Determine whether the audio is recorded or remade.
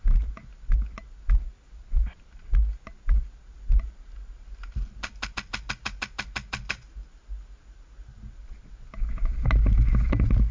recorded